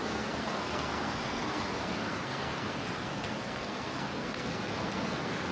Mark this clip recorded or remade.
remade